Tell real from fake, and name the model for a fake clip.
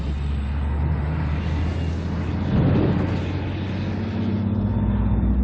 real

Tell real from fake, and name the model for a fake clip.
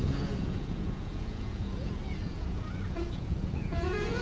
fake, vocoder, Vocos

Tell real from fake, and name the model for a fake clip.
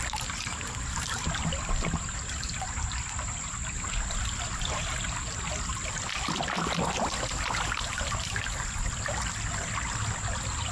real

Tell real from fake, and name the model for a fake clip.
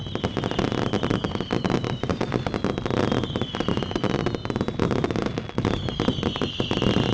real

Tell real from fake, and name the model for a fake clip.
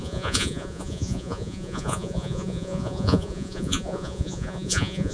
fake, vocoder, Vocos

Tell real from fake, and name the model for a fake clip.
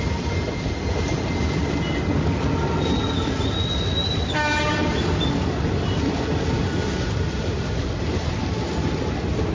real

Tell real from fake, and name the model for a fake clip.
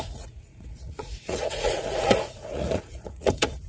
fake, vocoder, Vocos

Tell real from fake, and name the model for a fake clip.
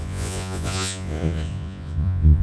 fake, vocoder, Vocos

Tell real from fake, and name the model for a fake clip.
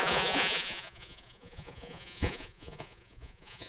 fake, vocoder, Vocos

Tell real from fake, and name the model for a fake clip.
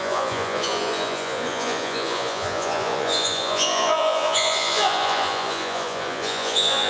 fake, vocoder, Vocos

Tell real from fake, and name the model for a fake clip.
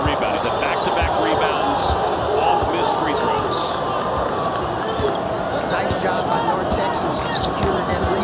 real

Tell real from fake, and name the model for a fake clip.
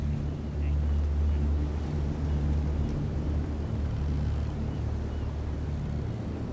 real